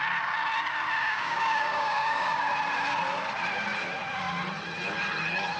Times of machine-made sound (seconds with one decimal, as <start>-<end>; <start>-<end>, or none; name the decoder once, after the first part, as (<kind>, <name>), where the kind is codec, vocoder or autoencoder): 1.0-2.4 (codec, DAC)